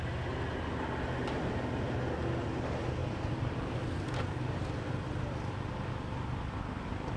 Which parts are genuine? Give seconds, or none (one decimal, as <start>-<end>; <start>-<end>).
0.0-3.0; 5.7-7.2